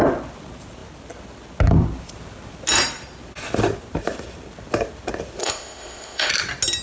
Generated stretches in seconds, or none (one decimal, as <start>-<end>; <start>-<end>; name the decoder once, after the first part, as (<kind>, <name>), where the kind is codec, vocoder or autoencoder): 5.4-6.3 (codec, ZipCodec)